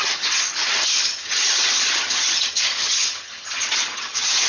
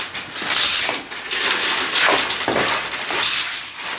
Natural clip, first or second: second